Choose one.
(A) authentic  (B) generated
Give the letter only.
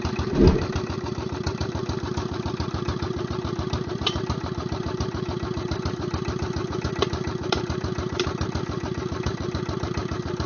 B